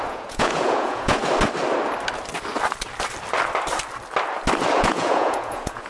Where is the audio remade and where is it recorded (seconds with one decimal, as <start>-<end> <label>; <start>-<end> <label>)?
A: 0.0-1.2 remade; 1.2-4.7 recorded; 4.7-5.9 remade